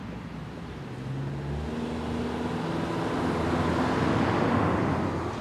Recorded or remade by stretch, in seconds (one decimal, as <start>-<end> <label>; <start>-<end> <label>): 0.0-5.4 recorded